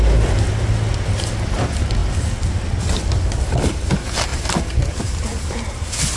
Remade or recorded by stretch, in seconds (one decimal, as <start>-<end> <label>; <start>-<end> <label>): 0.0-6.2 recorded